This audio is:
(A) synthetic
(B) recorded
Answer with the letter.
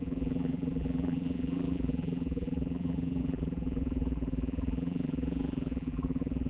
A